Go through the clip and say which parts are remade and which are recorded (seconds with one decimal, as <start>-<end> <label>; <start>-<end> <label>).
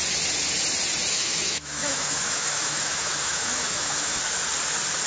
0.0-1.1 recorded; 1.1-4.2 remade; 4.2-5.1 recorded